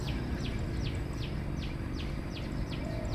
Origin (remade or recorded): recorded